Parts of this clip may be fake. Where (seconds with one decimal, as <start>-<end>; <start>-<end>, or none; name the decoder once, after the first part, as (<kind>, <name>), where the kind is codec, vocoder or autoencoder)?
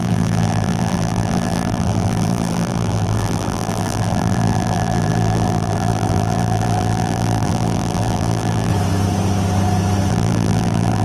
0.0-8.7 (vocoder, BigVGAN v2); 10.1-11.0